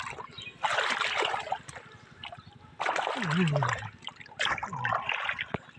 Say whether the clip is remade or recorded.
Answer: recorded